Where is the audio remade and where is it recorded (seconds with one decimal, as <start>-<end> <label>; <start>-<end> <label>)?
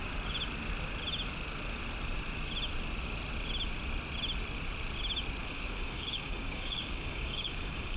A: 0.0-5.4 recorded; 5.4-8.0 remade